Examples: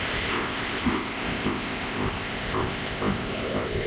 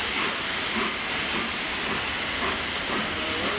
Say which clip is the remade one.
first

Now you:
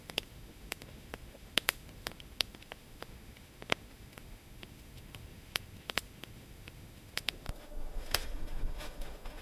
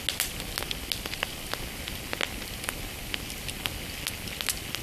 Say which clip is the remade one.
first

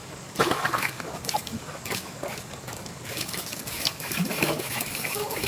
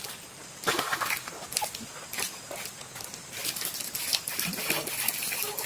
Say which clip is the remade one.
first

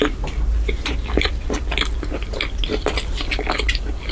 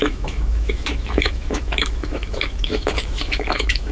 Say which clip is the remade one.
second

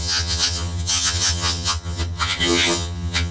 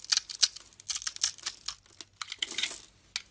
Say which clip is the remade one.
first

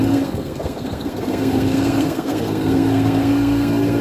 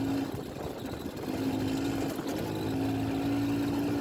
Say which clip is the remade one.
first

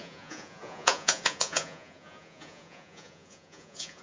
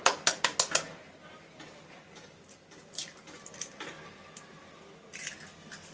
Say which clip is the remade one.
first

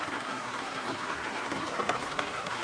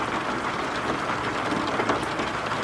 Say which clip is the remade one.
first